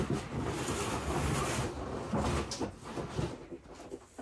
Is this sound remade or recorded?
recorded